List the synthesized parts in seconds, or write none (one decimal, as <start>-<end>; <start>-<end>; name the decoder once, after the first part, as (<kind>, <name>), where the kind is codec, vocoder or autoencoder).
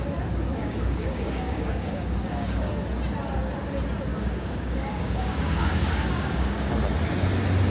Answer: 0.5-2.7 (codec, DAC); 4.1-6.7